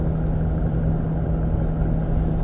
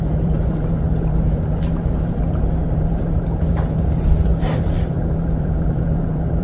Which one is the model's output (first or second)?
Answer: second